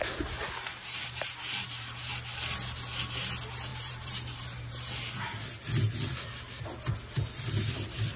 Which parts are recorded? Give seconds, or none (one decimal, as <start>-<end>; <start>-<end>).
0.0-0.7; 2.1-3.7; 4.9-8.2